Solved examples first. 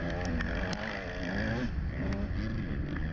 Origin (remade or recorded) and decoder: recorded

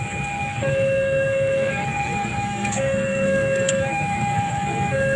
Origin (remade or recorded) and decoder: remade, codec, SNAC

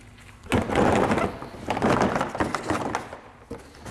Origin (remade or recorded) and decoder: recorded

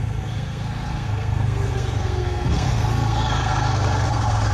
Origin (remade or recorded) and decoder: remade, codec, SNAC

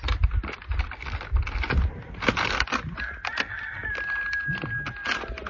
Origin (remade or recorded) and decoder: recorded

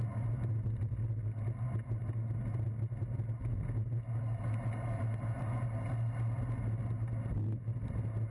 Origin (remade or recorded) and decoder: recorded